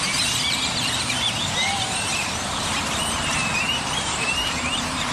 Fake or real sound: fake